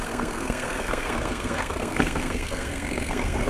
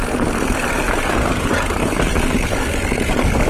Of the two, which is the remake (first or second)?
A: first